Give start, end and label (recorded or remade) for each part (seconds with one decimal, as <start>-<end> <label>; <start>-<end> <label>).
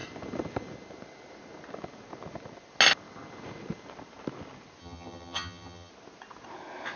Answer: 0.0-4.8 recorded; 4.8-5.9 remade; 5.9-7.0 recorded